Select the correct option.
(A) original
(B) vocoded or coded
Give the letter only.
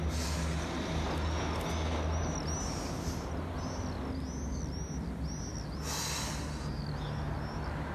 A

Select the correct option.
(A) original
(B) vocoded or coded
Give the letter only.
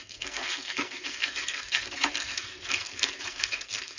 B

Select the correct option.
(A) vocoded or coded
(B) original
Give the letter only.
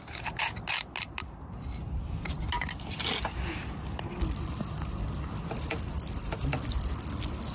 B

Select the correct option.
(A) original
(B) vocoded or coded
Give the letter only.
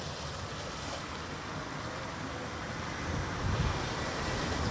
A